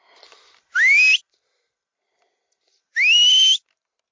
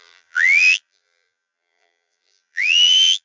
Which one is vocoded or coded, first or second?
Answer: second